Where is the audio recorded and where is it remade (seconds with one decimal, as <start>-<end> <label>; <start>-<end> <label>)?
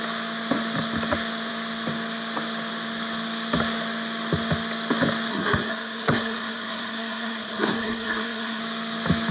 0.0-5.3 recorded; 5.3-8.6 remade; 8.6-9.3 recorded